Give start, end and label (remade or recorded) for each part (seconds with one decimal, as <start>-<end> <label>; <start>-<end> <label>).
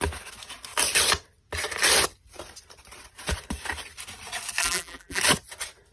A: 0.0-4.6 recorded; 4.6-5.2 remade; 5.2-5.9 recorded